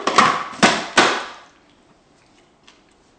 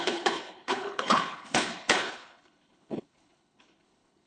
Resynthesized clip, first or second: second